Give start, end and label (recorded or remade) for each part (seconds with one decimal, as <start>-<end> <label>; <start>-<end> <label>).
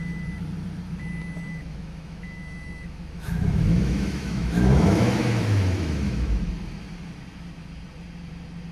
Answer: 0.0-1.7 recorded; 1.7-6.5 remade; 6.5-8.7 recorded